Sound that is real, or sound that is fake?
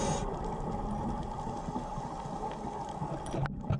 real